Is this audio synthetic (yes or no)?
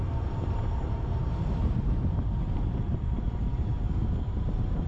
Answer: yes